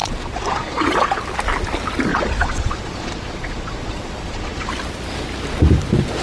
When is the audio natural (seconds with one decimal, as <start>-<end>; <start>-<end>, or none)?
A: 1.2-2.1; 4.7-6.2